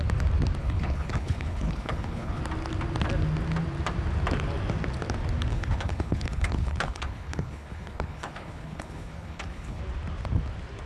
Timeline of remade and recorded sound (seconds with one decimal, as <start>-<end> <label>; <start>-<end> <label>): 0.0-0.6 recorded; 0.6-2.4 remade; 2.4-5.5 recorded; 5.5-9.8 remade; 9.8-10.9 recorded